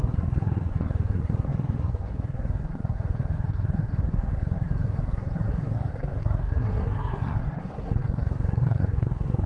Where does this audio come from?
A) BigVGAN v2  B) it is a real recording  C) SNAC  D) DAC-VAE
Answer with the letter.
C